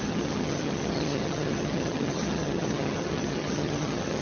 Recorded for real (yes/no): no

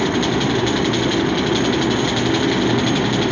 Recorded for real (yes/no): yes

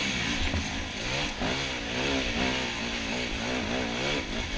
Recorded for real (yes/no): yes